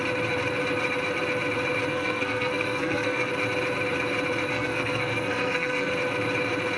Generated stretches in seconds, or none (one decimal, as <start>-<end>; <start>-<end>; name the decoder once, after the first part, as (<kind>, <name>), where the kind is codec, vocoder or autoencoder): 1.9-3.3 (codec, SNAC); 4.5-5.9